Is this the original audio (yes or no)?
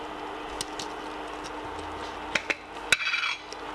yes